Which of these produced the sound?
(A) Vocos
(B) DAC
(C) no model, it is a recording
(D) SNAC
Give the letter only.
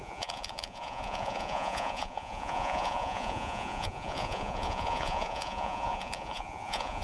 A